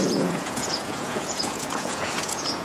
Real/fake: fake